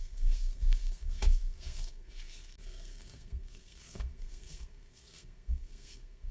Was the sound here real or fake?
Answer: fake